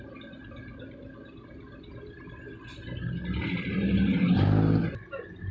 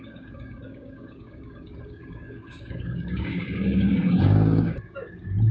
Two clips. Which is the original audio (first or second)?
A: first